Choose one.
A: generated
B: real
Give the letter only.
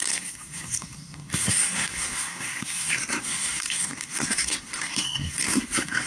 A